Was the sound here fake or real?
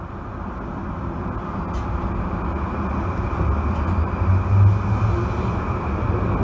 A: real